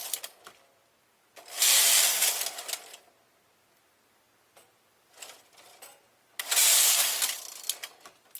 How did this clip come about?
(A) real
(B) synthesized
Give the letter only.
A